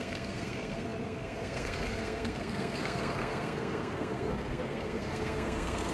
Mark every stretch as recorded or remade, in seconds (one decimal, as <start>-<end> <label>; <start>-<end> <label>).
0.0-5.9 remade